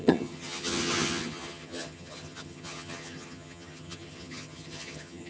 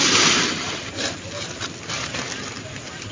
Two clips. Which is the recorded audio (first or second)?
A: second